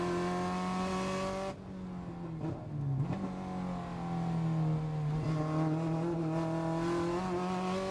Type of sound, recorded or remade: recorded